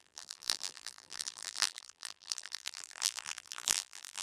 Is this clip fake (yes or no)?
yes